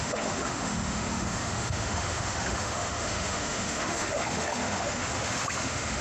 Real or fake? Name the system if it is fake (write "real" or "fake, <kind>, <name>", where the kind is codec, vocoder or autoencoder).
fake, autoencoder, DAC-VAE